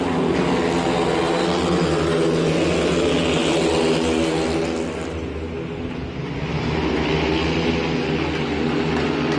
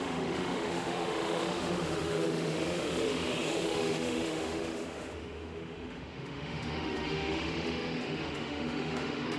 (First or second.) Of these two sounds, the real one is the first